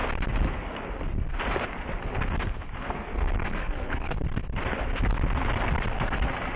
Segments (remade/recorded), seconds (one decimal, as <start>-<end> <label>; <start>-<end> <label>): 0.0-2.9 recorded; 2.9-4.2 remade; 4.2-6.6 recorded